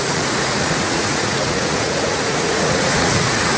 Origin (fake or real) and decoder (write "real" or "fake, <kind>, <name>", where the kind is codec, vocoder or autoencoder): fake, vocoder, Vocos